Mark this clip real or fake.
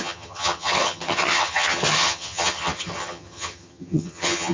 fake